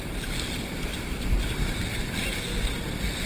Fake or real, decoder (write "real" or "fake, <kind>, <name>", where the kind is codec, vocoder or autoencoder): real